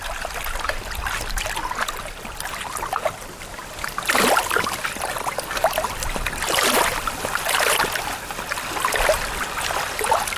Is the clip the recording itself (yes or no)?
yes